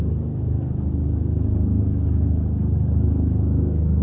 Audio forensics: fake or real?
fake